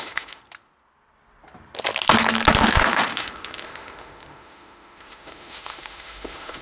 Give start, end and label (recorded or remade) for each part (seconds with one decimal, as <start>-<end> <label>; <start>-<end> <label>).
0.0-0.4 remade; 0.4-2.6 recorded; 2.6-6.6 remade